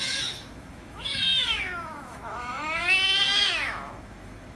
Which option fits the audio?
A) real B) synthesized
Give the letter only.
B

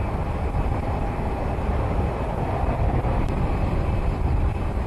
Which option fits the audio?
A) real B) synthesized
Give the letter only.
A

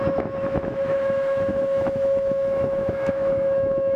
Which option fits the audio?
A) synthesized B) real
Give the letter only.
A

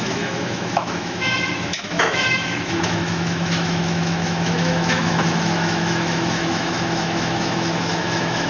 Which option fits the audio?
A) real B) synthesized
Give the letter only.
B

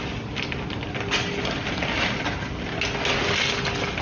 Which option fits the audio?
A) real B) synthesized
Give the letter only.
A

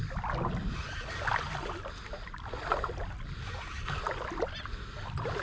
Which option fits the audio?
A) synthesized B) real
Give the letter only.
B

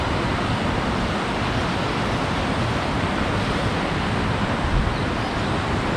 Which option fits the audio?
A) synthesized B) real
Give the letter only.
B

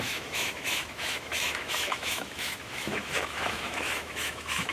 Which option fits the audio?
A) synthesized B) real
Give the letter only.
A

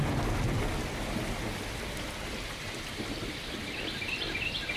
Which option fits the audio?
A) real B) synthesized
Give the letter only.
A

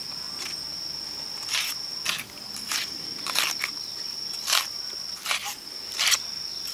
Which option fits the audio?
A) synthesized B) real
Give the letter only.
B